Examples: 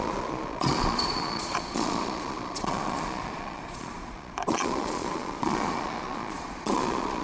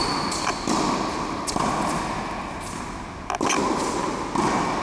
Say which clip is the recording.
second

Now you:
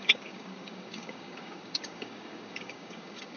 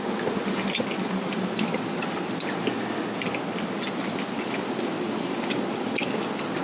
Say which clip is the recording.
second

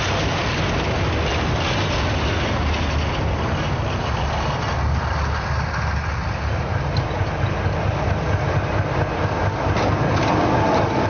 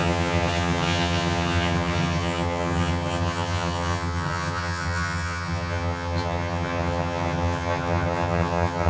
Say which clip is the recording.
first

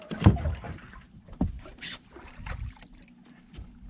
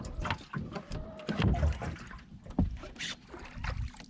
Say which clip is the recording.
second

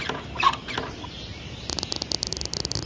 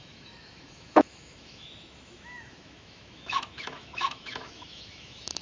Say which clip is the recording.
first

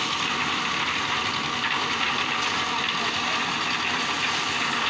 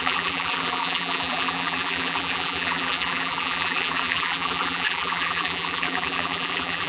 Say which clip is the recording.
first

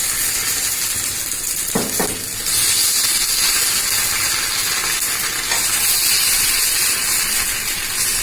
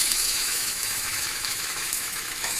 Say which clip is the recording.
first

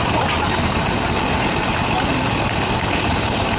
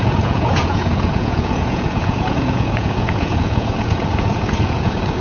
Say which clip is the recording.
first